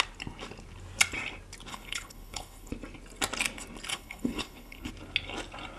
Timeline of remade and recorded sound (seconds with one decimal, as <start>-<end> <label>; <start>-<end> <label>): 0.0-1.7 recorded; 1.7-2.7 remade; 2.7-3.9 recorded; 3.9-4.9 remade; 4.9-5.8 recorded